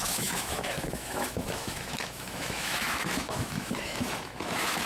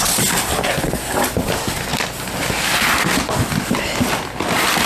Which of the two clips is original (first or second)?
second